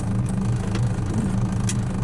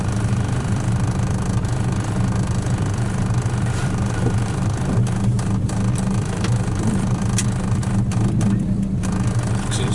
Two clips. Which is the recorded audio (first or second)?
first